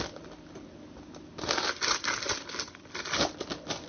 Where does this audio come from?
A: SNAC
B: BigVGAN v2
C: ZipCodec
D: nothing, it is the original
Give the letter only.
D